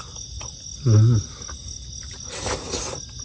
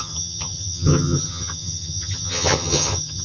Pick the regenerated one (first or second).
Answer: second